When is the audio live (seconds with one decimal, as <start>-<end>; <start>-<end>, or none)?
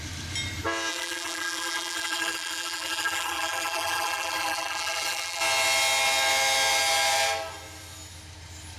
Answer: 0.0-0.9; 5.4-8.8